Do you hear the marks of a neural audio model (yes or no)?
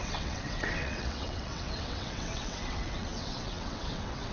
yes